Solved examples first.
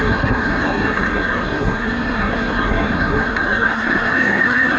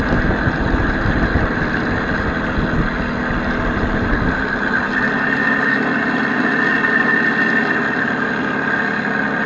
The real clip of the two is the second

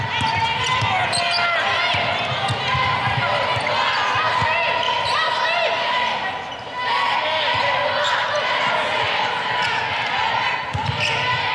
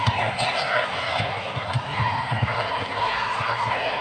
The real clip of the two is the first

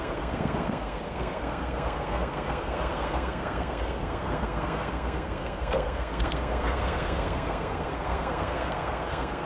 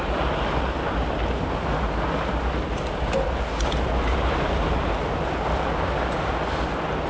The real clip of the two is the second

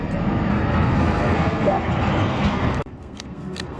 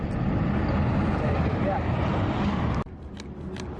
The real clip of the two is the second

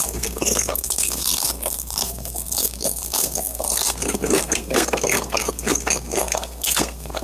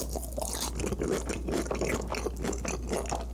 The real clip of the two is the second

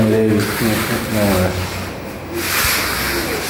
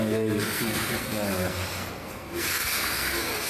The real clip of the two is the first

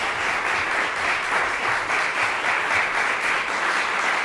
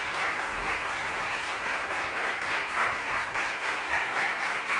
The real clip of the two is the first